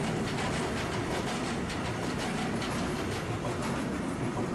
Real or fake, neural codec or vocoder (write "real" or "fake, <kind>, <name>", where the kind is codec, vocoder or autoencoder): real